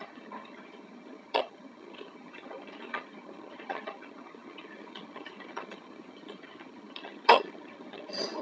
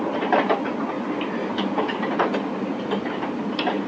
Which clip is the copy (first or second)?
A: first